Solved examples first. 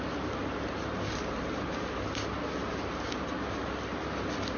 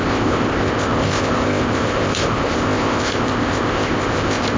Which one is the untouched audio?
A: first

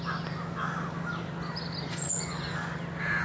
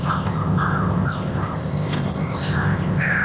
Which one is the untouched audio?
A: first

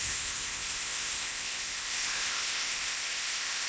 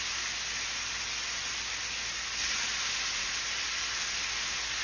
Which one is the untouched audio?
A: second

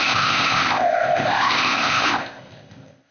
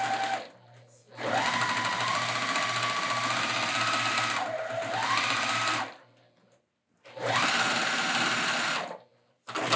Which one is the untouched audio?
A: second